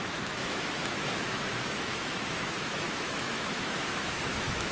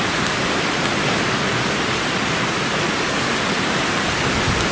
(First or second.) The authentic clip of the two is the second